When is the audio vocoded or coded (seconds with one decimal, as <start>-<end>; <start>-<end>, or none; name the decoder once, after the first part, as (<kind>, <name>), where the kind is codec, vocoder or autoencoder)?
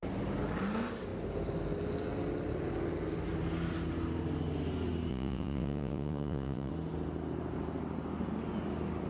5.1-6.7 (vocoder, Vocos)